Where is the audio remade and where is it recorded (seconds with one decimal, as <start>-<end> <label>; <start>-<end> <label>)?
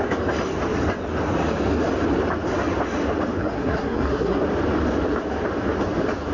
0.0-3.4 recorded; 3.4-4.4 remade; 4.4-6.3 recorded